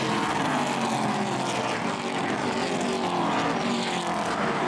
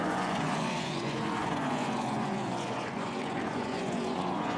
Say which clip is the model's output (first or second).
second